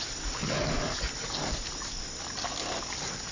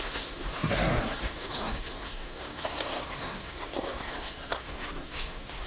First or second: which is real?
first